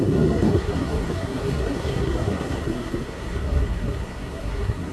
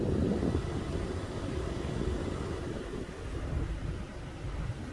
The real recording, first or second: second